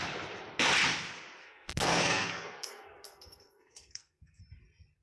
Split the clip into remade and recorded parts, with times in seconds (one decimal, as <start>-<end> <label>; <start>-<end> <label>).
0.0-1.4 recorded; 1.4-4.4 remade; 4.4-5.0 recorded